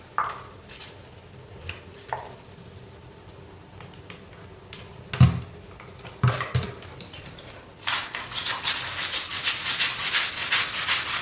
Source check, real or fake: real